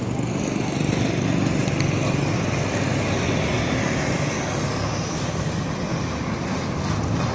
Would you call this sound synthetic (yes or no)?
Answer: no